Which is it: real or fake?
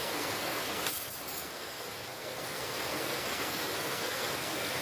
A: fake